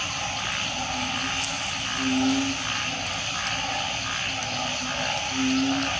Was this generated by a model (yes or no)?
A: no